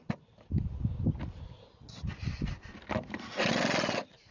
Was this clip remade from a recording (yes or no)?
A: no